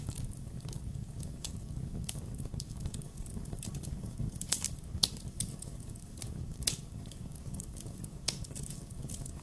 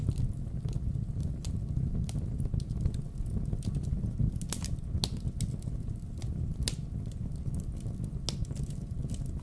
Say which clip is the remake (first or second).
first